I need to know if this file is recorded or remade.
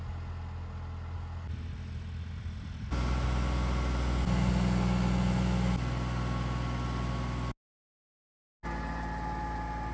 recorded